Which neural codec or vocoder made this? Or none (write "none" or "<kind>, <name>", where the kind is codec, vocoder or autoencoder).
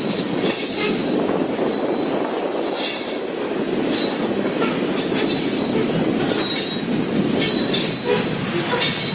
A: none